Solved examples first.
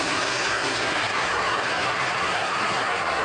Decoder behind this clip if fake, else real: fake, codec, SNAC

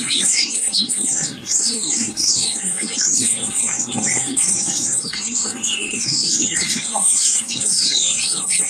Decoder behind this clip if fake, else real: fake, codec, SNAC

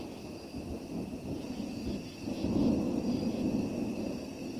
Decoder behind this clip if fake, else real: real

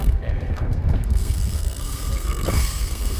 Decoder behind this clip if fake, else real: fake, codec, SNAC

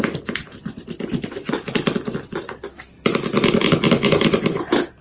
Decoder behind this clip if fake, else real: real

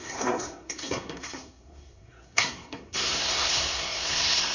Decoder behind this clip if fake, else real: fake, codec, SNAC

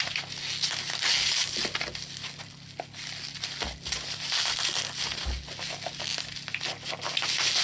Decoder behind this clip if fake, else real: real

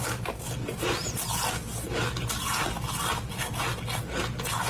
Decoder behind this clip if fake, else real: real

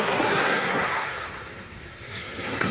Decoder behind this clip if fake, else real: fake, codec, SNAC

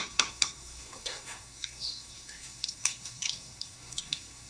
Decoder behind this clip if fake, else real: fake, codec, SNAC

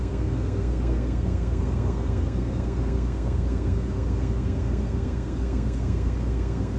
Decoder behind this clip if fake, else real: fake, codec, SNAC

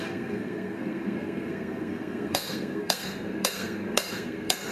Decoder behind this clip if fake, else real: fake, codec, SNAC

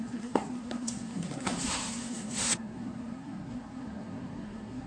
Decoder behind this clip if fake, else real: fake, codec, SNAC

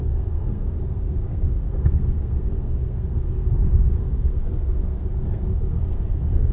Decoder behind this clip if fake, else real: fake, codec, SNAC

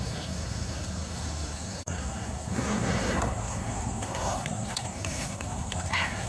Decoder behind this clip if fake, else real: fake, codec, SNAC